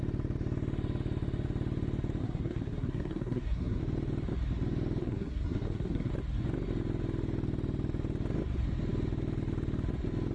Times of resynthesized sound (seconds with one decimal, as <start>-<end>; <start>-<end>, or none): 2.2-3.8; 5.0-6.1